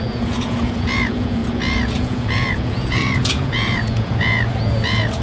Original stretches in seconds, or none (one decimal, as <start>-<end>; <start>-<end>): none